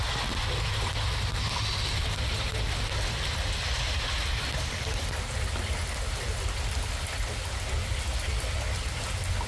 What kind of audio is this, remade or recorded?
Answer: recorded